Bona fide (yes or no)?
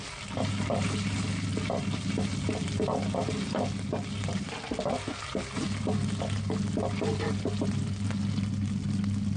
yes